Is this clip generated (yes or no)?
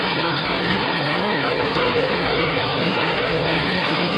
yes